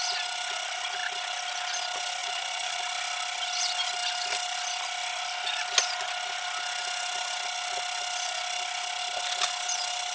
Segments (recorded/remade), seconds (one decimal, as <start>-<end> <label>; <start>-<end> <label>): 0.0-2.2 recorded; 2.2-2.8 remade; 2.8-10.1 recorded